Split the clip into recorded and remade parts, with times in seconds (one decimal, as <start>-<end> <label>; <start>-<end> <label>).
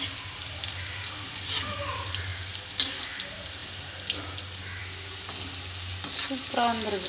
0.0-7.1 recorded